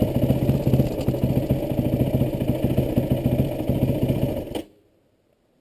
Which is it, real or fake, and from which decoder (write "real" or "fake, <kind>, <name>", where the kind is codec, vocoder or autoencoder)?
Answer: real